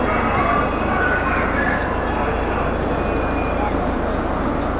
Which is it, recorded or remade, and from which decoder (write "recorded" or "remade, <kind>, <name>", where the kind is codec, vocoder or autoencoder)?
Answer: recorded